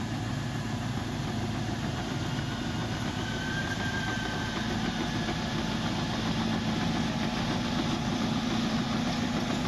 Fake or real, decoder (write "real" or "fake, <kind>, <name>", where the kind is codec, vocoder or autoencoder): real